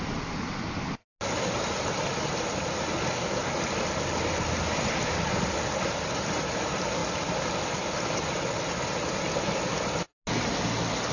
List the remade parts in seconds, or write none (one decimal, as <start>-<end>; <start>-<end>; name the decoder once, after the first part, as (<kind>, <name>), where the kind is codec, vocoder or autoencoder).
none